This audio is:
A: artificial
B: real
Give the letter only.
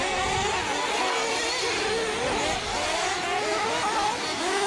B